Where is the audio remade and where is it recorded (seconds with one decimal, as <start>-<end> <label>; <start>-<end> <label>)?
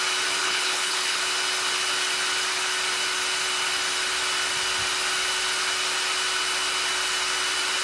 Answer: 0.0-0.4 recorded; 0.4-1.2 remade; 1.2-7.8 recorded